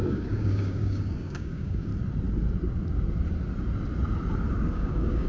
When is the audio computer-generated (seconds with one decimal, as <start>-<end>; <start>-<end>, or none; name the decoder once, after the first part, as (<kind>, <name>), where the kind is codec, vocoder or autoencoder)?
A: 0.0-1.9 (codec, DAC); 4.7-5.3